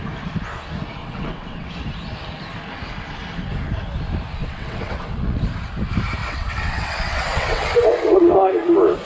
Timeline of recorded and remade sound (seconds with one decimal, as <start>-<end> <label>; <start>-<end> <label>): 0.0-1.0 recorded; 1.0-1.7 remade; 1.7-4.4 recorded; 4.4-5.4 remade; 5.4-6.2 recorded; 6.2-8.5 remade; 8.5-9.0 recorded